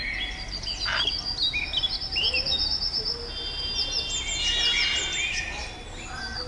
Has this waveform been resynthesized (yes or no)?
no